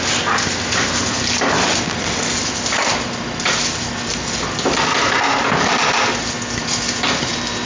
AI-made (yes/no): no